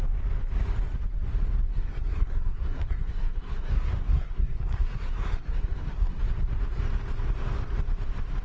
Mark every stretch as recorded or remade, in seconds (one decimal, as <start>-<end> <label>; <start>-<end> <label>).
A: 0.0-1.7 recorded; 1.7-6.2 remade; 6.2-8.4 recorded